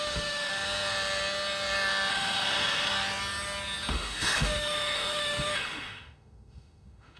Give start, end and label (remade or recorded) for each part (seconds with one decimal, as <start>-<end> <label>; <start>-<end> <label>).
0.0-0.5 remade; 0.5-2.1 recorded; 2.1-2.9 remade; 2.9-3.9 recorded; 3.9-7.2 remade